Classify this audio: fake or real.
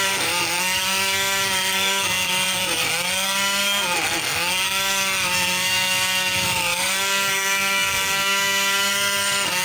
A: fake